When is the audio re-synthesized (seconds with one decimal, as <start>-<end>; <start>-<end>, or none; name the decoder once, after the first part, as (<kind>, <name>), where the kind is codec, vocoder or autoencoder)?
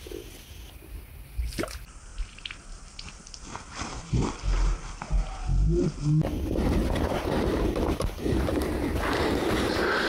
2.1-3.3 (vocoder, BigVGAN v2)